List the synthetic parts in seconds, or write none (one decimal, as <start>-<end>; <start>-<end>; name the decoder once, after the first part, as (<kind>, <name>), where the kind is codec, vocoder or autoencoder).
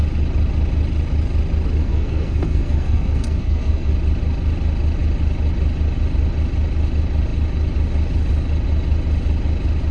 1.8-3.9 (codec, SNAC)